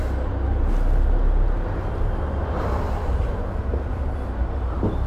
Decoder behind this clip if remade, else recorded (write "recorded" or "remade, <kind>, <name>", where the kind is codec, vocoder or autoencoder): recorded